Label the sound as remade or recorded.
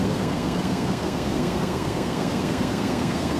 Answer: remade